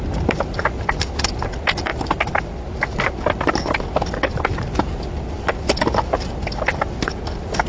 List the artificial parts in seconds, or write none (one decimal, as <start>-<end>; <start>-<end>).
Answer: none